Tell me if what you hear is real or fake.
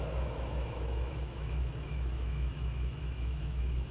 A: fake